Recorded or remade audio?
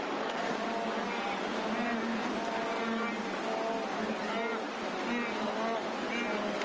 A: recorded